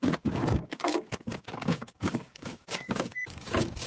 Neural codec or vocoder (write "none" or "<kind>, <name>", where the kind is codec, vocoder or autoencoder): codec, DAC